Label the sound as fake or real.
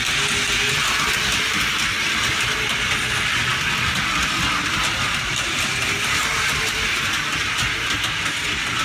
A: real